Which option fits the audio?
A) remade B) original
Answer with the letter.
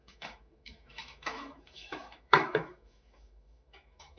A